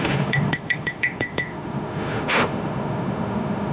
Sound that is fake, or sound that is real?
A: fake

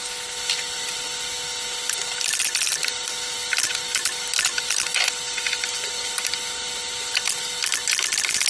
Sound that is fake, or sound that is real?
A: real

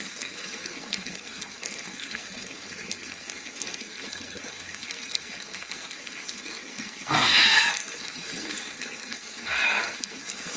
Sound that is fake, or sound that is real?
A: fake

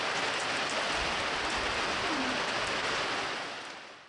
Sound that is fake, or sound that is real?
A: real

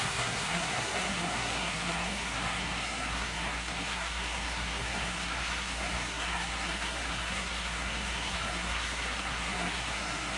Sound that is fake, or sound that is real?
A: fake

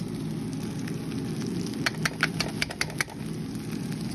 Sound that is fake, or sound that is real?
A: real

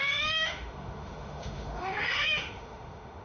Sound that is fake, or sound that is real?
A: fake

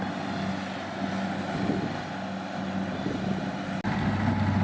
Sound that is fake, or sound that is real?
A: real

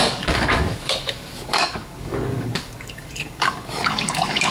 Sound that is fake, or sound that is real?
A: fake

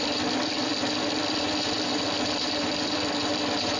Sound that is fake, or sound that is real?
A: fake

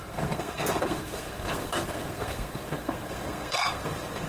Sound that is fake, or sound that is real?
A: fake